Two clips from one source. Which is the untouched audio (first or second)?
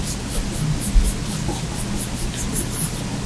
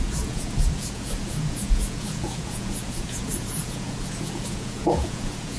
first